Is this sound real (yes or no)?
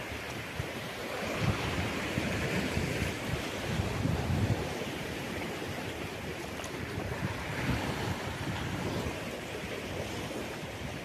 no